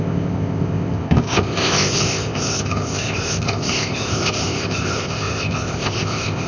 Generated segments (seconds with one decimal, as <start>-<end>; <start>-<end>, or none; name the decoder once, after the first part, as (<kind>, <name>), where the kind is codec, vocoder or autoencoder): 0.0-6.5 (codec, ZipCodec)